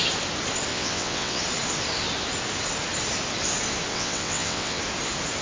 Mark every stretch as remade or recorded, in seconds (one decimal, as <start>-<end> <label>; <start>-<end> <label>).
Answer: 0.0-0.7 recorded; 0.7-1.4 remade; 1.4-3.9 recorded; 3.9-4.8 remade; 4.8-5.4 recorded